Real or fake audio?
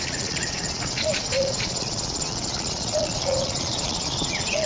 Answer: fake